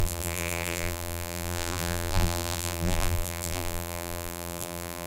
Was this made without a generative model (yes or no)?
no